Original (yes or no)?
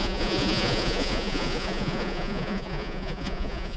no